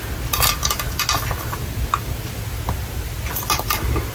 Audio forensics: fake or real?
real